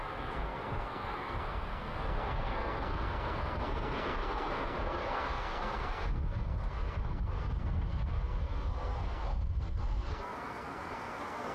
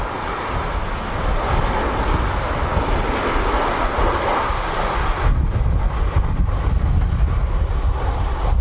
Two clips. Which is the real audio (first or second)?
second